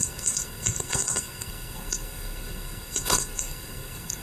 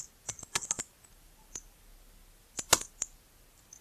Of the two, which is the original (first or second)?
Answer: second